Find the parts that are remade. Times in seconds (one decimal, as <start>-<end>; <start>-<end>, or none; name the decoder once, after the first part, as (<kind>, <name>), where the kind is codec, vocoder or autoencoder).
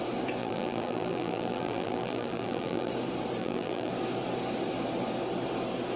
0.4-2.9 (vocoder, BigVGAN v2); 3.4-3.9